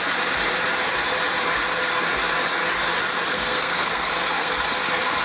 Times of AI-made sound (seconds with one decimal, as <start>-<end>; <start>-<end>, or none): 3.3-4.6